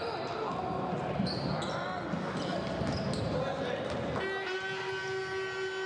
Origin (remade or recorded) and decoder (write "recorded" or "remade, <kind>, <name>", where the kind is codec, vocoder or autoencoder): recorded